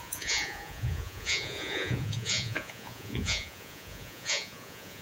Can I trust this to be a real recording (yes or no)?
no